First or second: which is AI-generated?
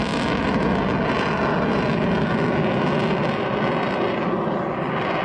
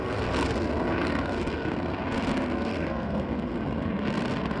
second